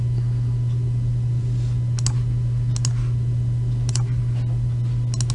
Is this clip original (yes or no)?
yes